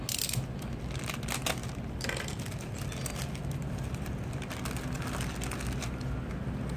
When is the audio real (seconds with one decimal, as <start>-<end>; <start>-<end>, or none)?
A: 0.0-6.8